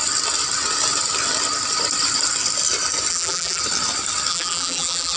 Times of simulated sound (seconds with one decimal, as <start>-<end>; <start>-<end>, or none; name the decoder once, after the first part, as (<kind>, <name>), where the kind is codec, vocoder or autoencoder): 3.1-3.6 (vocoder, BigVGAN v2); 4.3-5.2